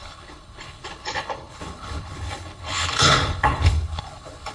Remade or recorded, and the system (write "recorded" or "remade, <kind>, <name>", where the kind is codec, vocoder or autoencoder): remade, codec, HILCodec